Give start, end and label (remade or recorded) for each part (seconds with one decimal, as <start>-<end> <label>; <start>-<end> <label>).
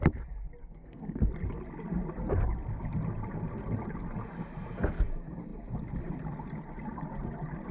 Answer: 0.0-0.6 recorded; 0.6-1.2 remade; 1.2-7.7 recorded